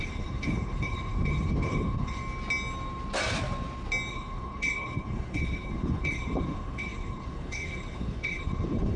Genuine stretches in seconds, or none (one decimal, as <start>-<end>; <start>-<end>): 2.2-4.1